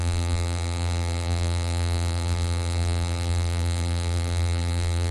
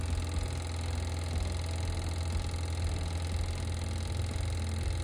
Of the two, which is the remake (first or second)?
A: first